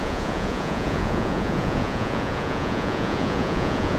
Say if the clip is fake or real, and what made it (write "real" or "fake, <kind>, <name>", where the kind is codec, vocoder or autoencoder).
fake, vocoder, Vocos